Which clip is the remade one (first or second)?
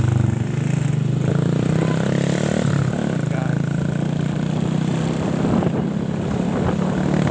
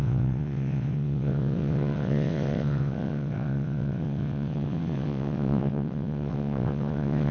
second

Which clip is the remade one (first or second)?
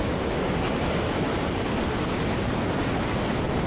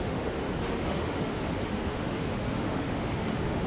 second